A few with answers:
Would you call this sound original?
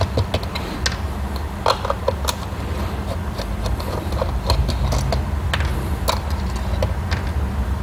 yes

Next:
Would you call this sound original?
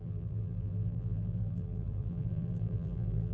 no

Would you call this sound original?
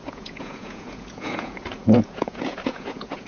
no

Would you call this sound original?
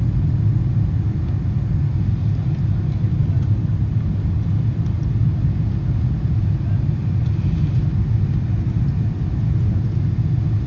yes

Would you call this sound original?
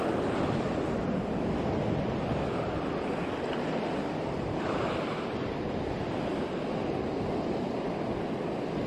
yes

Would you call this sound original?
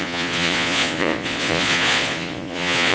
no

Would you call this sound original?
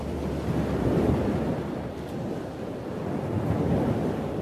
yes